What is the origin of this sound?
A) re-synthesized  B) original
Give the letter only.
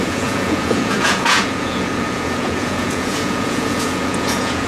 A